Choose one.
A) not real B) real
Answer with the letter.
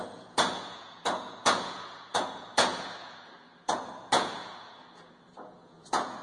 A